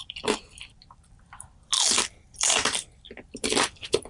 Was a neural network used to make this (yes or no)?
yes